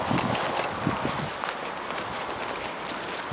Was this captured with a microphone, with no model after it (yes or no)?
yes